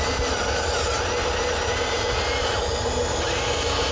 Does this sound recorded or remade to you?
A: recorded